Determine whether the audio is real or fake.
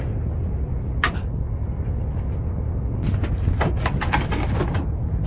real